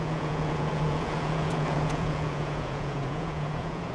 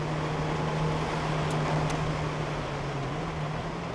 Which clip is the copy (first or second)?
first